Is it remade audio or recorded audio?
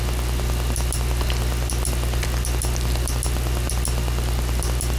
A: recorded